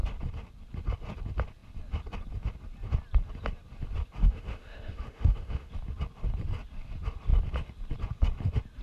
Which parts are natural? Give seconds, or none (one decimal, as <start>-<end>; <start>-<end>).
0.0-4.2; 5.7-8.8